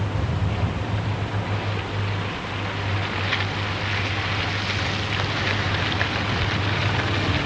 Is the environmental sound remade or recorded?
recorded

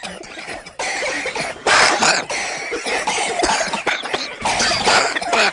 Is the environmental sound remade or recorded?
recorded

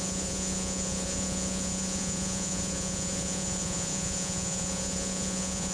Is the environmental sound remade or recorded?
remade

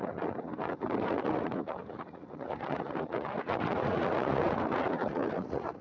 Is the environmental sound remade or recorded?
remade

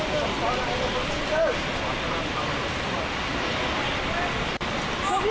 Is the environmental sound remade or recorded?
recorded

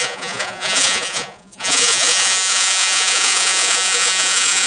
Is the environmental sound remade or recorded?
remade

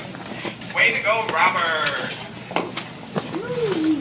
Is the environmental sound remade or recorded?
recorded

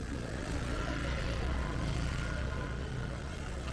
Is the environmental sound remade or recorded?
remade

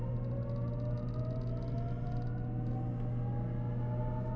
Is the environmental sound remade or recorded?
recorded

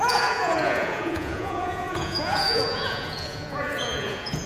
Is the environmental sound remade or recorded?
remade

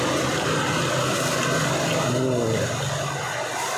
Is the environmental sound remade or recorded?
recorded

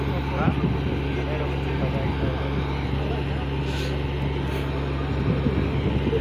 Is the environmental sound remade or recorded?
recorded